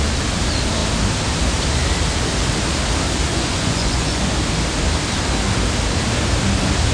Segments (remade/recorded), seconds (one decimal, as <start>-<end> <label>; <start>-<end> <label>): 0.0-3.3 recorded; 3.3-4.3 remade; 4.3-6.9 recorded